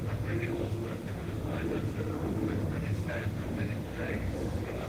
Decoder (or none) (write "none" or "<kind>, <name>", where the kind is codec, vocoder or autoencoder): autoencoder, DAC-VAE